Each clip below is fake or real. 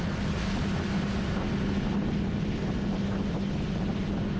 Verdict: real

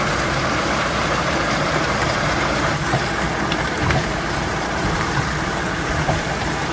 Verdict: fake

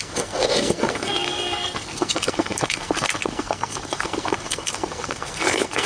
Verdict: fake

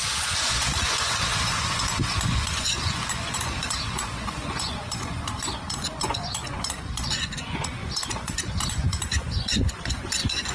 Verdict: fake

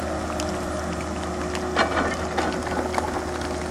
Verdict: real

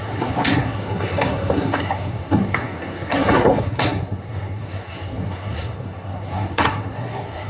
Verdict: fake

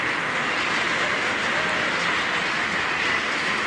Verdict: real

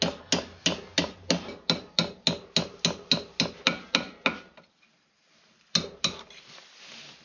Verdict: real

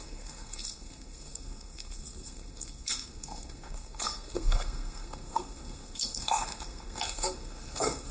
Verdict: fake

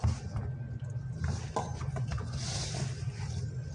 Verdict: real